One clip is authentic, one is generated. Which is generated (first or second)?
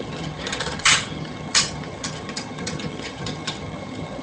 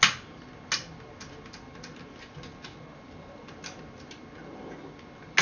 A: first